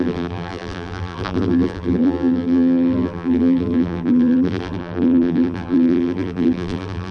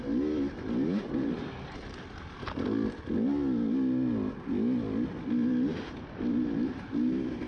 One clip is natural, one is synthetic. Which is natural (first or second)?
second